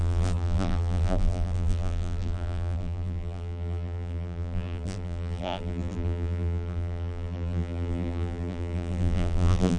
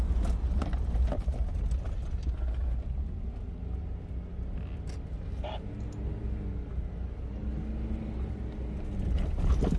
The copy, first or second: first